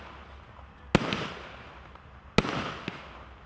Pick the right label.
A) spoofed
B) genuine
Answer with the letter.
B